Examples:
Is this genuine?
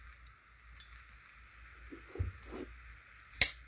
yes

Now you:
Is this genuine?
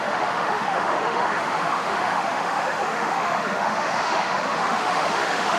no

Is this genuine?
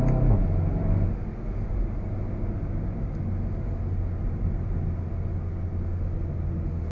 yes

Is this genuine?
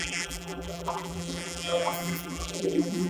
no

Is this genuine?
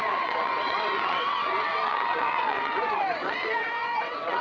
no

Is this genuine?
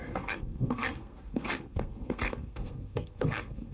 no